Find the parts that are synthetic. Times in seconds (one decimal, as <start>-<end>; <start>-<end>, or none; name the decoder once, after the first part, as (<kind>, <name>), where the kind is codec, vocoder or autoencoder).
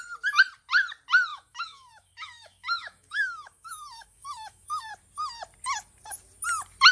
1.3-4.9 (autoencoder, DAC-VAE)